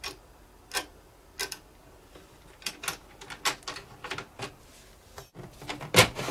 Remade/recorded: recorded